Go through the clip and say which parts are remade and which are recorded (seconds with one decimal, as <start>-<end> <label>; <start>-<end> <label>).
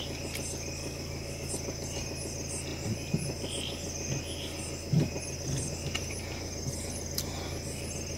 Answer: 0.0-0.8 recorded; 0.8-1.5 remade; 1.5-8.2 recorded